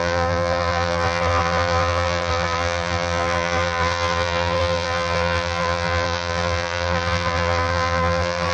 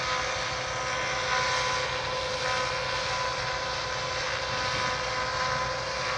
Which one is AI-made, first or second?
first